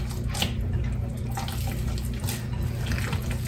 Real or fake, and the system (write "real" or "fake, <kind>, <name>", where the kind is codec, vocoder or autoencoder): real